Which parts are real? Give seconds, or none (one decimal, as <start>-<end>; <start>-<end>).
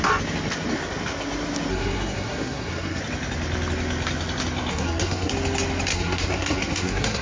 0.0-1.7; 3.0-4.7; 5.3-5.9